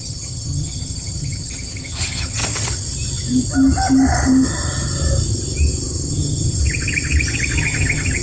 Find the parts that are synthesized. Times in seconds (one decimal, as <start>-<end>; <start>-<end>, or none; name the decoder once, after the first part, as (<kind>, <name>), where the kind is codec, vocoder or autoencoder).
0.0-2.4 (vocoder, HiFi-GAN); 6.1-6.6; 7.6-8.2

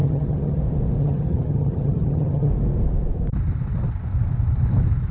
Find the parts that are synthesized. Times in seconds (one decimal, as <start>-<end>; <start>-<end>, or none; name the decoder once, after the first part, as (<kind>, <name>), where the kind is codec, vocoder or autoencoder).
0.0-0.6 (vocoder, HiFi-GAN); 1.0-2.5

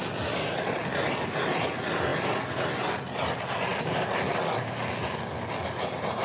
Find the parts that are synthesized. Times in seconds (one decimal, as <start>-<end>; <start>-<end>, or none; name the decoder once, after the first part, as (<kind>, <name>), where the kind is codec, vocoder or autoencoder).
none

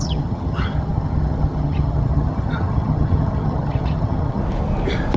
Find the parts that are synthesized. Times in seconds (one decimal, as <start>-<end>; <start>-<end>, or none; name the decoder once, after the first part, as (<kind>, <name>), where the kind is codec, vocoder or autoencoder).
0.0-4.4 (vocoder, HiFi-GAN)

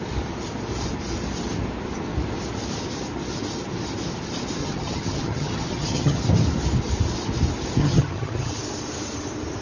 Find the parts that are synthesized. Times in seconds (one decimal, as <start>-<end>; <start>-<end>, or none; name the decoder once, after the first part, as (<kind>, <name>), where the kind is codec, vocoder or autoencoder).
4.6-6.2 (vocoder, HiFi-GAN); 7.8-8.5

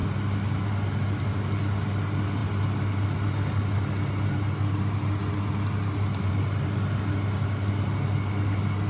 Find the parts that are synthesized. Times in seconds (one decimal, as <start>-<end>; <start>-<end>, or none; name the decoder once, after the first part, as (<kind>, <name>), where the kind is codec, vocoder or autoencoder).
none

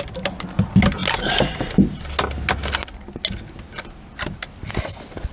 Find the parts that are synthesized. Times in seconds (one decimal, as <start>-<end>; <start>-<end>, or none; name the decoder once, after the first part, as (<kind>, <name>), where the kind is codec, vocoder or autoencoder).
none